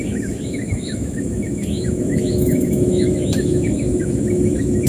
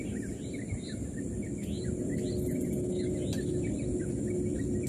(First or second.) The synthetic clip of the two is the first